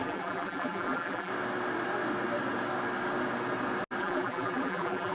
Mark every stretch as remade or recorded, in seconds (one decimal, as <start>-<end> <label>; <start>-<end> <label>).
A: 0.0-1.3 remade; 1.3-4.0 recorded; 4.0-5.1 remade